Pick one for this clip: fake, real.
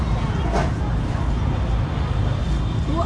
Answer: real